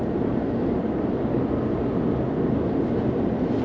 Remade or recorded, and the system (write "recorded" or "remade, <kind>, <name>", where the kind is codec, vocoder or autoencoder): recorded